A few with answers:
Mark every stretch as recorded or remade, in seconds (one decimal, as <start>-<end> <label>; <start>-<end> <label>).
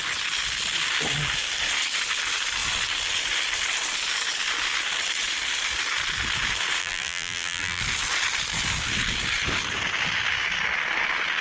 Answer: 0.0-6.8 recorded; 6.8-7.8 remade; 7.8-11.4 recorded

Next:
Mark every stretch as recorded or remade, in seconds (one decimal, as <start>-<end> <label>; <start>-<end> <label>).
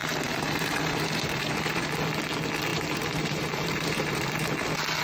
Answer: 0.0-1.9 remade; 1.9-2.7 recorded; 2.7-4.3 remade; 4.3-5.0 recorded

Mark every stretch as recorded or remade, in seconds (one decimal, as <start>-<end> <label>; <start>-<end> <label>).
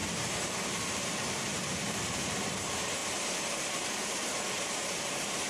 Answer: 0.0-5.5 remade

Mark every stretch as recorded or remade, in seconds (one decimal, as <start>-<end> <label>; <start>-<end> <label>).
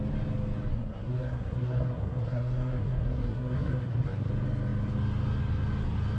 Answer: 0.0-0.7 recorded; 0.7-4.3 remade; 4.3-6.2 recorded